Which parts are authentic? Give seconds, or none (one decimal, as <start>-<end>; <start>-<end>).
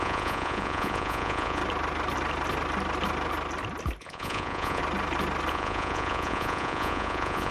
1.6-4.0; 4.8-5.5